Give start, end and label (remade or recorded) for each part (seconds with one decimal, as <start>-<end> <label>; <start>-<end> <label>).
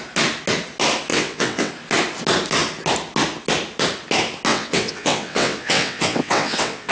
0.0-1.1 recorded; 1.1-1.7 remade; 1.7-4.5 recorded; 4.5-6.9 remade